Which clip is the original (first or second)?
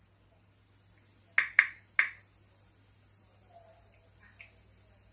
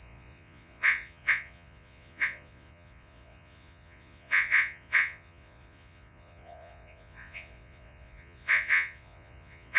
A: first